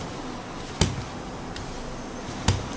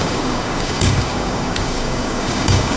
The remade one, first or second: second